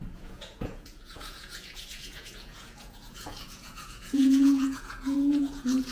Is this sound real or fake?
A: fake